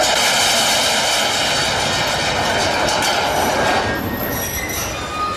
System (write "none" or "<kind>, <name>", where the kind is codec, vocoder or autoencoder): none